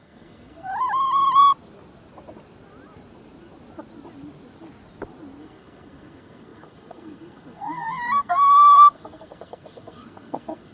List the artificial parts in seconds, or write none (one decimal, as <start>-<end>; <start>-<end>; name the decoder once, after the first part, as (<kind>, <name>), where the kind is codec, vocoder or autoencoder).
0.0-0.7 (codec, SNAC); 5.4-10.7